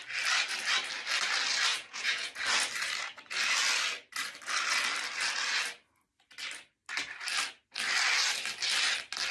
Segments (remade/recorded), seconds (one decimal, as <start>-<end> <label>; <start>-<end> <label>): 0.0-1.7 recorded; 1.7-2.4 remade; 2.4-9.3 recorded